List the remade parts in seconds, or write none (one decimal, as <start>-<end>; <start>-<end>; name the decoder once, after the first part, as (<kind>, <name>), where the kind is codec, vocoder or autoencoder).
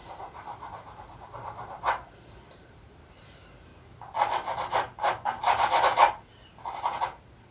0.0-3.7 (vocoder, BigVGAN v2)